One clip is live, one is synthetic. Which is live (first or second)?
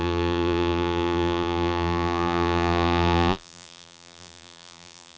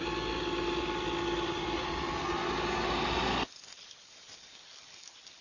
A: second